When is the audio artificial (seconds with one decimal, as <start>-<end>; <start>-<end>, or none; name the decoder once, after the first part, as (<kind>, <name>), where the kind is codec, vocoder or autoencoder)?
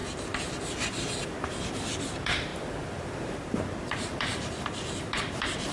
0.0-5.7 (vocoder, BigVGAN v2)